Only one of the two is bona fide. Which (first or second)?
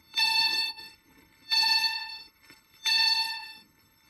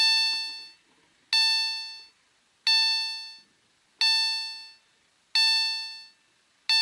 second